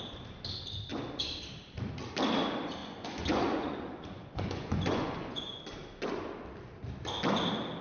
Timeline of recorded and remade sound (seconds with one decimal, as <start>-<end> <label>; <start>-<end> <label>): 0.0-2.8 recorded; 2.8-5.6 remade; 5.6-7.8 recorded